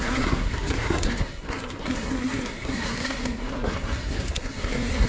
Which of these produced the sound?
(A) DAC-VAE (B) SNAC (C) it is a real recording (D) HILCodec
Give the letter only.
B